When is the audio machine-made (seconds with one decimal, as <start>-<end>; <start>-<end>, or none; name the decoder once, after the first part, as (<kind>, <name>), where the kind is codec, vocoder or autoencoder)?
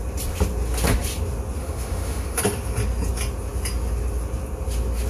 1.6-2.4 (autoencoder, DAC-VAE)